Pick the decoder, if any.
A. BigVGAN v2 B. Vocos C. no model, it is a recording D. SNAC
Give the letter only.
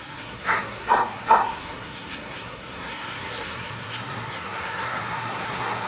D